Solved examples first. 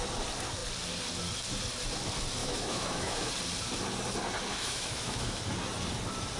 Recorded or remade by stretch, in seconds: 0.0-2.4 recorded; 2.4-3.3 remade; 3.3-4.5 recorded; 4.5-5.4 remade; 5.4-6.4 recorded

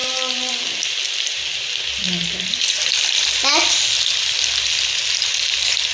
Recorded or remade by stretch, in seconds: 0.0-5.9 recorded